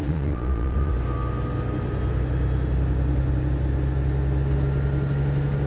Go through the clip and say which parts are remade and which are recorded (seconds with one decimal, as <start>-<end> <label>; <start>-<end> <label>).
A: 0.0-0.9 remade; 0.9-5.7 recorded